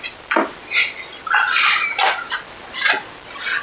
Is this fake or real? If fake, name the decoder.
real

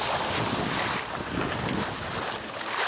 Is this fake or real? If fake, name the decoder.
real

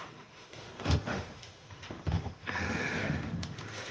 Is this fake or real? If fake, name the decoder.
fake, autoencoder, DAC-VAE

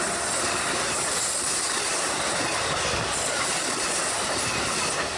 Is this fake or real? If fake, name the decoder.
real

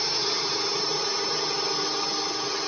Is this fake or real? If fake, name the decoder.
real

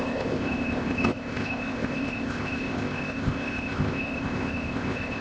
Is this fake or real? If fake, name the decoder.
fake, codec, ZipCodec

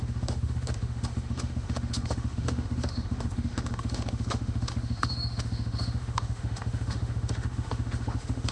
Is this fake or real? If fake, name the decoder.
fake, autoencoder, DAC-VAE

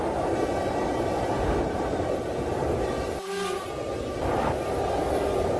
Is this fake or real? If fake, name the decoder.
real